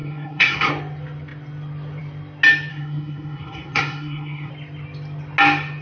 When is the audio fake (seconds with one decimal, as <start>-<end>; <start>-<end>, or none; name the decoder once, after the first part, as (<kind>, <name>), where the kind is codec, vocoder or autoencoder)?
0.0-0.7 (codec, SNAC); 2.7-4.5

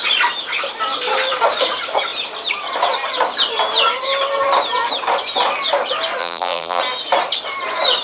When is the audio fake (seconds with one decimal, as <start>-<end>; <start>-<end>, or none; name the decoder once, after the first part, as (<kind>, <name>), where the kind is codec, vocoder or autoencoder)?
6.2-6.8 (vocoder, BigVGAN v2)

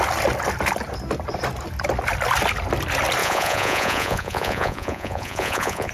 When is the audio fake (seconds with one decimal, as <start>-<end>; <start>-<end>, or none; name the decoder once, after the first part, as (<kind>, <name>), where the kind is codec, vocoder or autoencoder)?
3.2-5.9 (vocoder, Vocos)

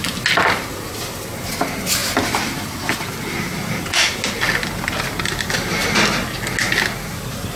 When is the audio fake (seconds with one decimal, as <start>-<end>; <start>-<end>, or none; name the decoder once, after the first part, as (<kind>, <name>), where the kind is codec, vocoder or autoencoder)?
none

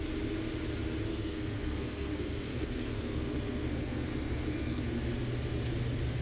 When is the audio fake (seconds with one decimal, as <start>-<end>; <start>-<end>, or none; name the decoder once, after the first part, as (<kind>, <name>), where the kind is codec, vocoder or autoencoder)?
1.1-4.8 (codec, SNAC)

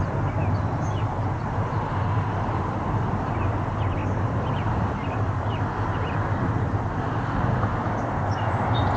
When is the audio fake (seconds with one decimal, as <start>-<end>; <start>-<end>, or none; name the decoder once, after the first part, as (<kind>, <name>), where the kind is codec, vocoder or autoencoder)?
4.0-7.9 (vocoder, BigVGAN v2)

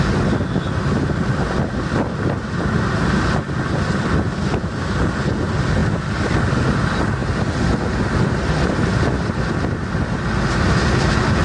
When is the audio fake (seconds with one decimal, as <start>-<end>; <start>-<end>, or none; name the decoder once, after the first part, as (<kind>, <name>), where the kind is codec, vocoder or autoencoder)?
none

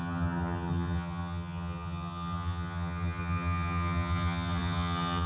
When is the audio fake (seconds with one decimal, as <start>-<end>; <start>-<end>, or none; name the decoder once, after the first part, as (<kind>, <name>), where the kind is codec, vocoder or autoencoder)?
0.0-5.3 (vocoder, HiFi-GAN)